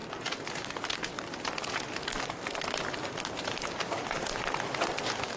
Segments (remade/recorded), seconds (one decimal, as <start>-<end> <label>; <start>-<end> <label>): 0.0-5.4 recorded